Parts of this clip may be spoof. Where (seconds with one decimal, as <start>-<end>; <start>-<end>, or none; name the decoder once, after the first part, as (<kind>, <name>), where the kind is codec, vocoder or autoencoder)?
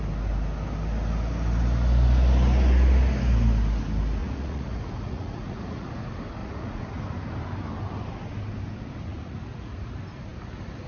4.2-5.9 (vocoder, Vocos); 6.4-7.0; 9.1-9.9